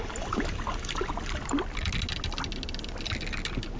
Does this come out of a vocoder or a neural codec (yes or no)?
no